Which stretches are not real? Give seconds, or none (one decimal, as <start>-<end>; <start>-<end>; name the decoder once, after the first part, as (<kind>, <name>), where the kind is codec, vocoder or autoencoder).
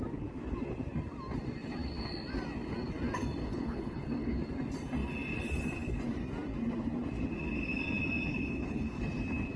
3.4-4.4 (codec, HILCodec); 8.3-9.0